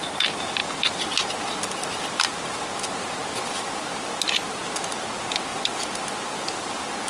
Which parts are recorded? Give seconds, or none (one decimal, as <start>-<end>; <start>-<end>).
0.0-7.1